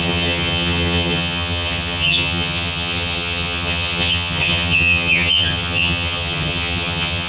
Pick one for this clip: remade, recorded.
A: remade